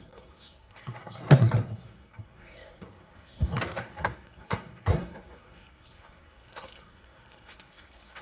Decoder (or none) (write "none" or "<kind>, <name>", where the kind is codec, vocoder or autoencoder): codec, SNAC